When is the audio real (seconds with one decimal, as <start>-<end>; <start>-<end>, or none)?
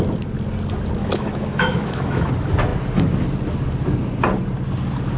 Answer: 0.0-1.0; 2.3-5.2